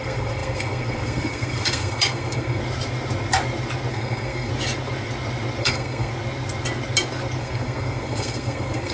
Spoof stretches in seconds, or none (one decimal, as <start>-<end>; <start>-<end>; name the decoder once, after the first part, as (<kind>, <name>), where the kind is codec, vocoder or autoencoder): 0.0-2.6 (codec, SNAC); 3.9-4.5; 5.6-6.1; 7.4-8.9